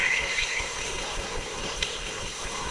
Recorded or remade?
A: remade